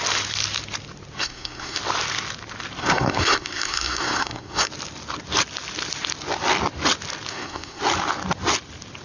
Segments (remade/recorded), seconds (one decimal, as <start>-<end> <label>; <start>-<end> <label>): 0.0-1.2 recorded; 1.2-1.8 remade; 1.8-2.8 recorded; 2.8-4.7 remade; 4.7-7.3 recorded; 7.3-7.8 remade; 7.8-9.0 recorded